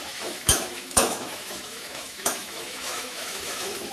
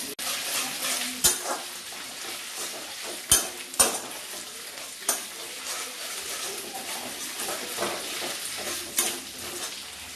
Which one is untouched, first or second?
second